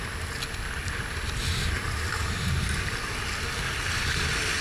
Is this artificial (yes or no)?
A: no